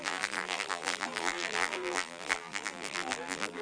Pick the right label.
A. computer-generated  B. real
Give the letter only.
A